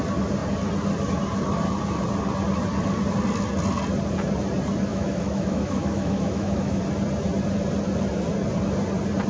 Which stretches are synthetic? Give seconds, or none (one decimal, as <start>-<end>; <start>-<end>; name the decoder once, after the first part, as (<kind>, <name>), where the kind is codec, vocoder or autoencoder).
4.9-6.8 (autoencoder, DAC-VAE)